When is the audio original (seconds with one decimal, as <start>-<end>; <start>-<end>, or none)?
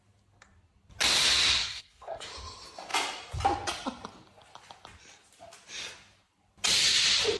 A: 0.0-1.6; 2.3-7.4